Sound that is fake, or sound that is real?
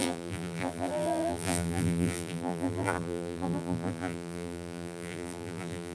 fake